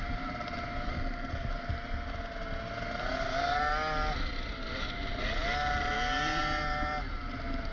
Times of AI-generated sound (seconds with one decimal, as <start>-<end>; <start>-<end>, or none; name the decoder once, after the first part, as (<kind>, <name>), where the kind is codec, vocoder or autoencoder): 0.9-1.5 (codec, SNAC)